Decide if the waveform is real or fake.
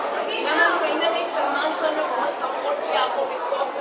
real